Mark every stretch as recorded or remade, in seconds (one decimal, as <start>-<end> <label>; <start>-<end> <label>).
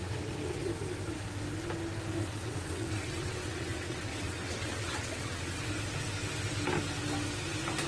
0.0-0.6 remade; 0.6-2.2 recorded; 2.2-5.6 remade; 5.6-7.9 recorded